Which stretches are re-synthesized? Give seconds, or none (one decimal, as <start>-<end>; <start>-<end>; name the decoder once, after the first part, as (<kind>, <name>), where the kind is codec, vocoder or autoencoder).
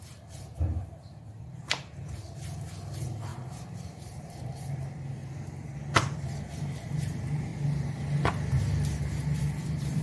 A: 0.0-5.2 (vocoder, BigVGAN v2); 6.4-7.5; 9.4-10.0